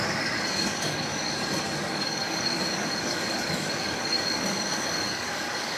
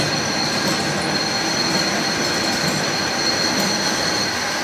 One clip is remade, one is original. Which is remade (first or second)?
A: first